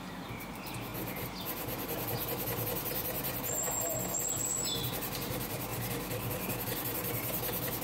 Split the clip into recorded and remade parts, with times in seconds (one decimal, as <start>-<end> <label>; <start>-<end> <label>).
0.0-7.8 recorded